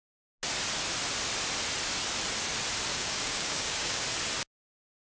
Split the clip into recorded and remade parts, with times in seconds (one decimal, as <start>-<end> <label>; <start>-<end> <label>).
0.0-2.9 recorded; 2.9-4.0 remade; 4.0-5.1 recorded

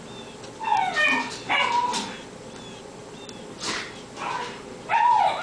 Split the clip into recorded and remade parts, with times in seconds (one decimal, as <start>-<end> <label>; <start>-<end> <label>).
0.0-5.4 recorded

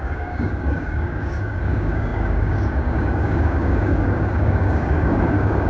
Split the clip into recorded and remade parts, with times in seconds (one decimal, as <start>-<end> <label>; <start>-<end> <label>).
0.0-5.7 remade

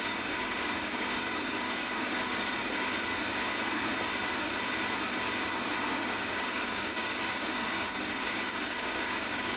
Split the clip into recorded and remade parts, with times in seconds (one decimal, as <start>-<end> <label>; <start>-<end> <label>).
0.0-2.6 remade; 2.6-5.9 recorded; 5.9-9.6 remade